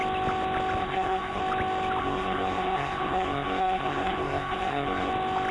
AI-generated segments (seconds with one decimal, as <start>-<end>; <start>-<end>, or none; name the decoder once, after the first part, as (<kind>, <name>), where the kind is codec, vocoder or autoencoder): 0.8-1.4 (codec, SNAC); 2.0-5.1

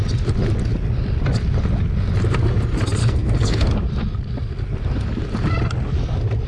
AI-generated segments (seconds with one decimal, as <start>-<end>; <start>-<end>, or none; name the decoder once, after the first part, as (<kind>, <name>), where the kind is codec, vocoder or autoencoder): 3.0-3.6 (codec, SNAC)

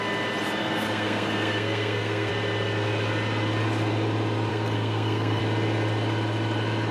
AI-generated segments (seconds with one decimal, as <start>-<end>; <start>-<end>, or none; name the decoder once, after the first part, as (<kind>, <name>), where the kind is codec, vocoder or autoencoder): 0.6-2.3 (codec, SNAC); 4.5-5.4

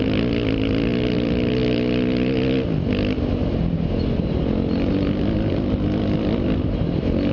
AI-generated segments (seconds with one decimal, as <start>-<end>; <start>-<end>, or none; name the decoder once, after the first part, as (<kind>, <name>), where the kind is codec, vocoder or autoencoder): none

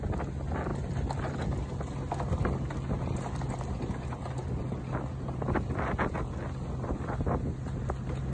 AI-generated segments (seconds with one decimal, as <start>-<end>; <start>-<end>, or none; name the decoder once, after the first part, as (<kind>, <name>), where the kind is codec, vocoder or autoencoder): none

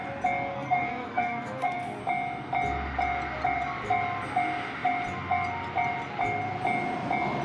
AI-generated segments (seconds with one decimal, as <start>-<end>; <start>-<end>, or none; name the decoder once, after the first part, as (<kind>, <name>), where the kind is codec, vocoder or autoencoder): 0.5-2.0 (codec, SNAC)